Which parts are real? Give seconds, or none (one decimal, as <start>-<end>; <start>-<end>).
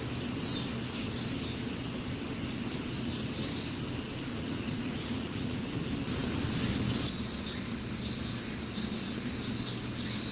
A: 0.0-4.3; 5.8-10.3